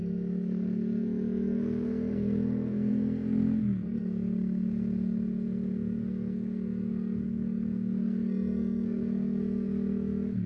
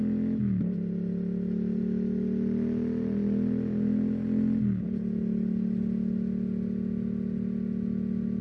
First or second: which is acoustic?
second